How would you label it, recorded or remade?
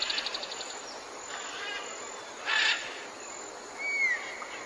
recorded